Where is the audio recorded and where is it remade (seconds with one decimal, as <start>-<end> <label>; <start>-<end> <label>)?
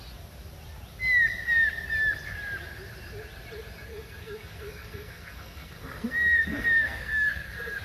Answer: 0.0-3.9 recorded; 3.9-7.8 remade